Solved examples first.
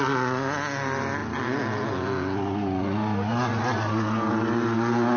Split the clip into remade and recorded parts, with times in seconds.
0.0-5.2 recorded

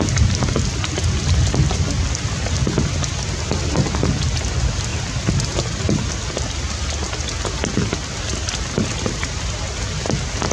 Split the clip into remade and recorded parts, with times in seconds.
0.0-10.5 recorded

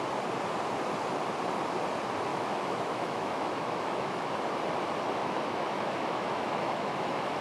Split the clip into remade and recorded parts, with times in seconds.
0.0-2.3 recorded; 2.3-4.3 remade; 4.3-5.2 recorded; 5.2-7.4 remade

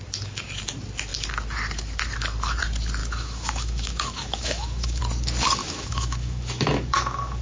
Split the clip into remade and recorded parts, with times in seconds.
0.0-3.0 recorded; 3.0-5.0 remade; 5.0-5.6 recorded; 5.6-7.4 remade

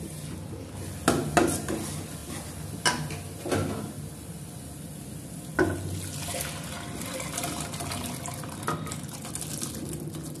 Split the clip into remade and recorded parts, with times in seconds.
0.0-10.4 recorded

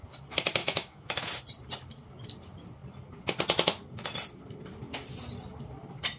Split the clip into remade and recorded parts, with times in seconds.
0.0-0.6 recorded; 0.6-1.3 remade; 1.3-6.2 recorded

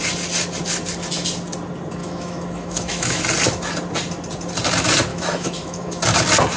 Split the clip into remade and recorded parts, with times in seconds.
0.0-2.0 recorded; 2.0-3.2 remade; 3.2-5.1 recorded; 5.1-6.0 remade; 6.0-6.6 recorded

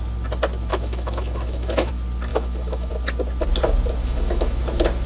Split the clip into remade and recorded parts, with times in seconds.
0.0-0.7 recorded; 0.7-1.9 remade; 1.9-2.3 recorded; 2.3-2.9 remade; 2.9-4.0 recorded; 4.0-4.6 remade; 4.6-5.1 recorded